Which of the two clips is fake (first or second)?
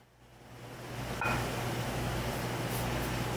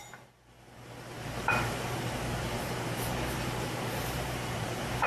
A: second